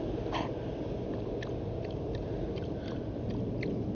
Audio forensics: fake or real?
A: real